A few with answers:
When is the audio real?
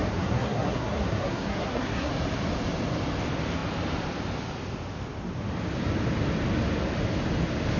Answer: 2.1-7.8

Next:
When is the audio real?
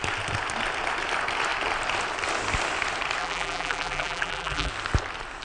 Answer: 0.0-3.2; 4.7-5.4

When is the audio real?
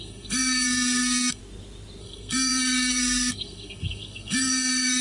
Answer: 1.4-2.0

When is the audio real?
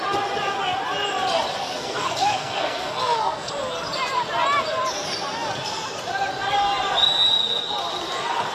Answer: 0.0-1.6; 3.5-8.5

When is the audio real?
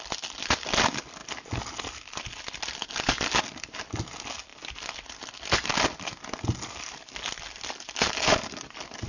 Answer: 0.0-9.1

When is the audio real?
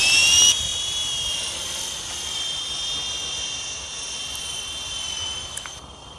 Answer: 0.0-6.2